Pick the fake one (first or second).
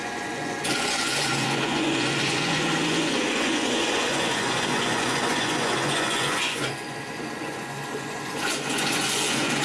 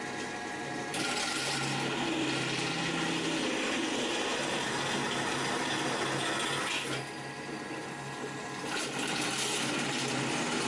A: first